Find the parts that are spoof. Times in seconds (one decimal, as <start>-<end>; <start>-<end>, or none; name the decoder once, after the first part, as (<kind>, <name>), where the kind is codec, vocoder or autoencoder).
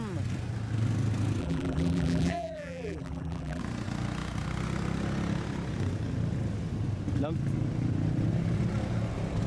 1.4-3.6 (vocoder, BigVGAN v2)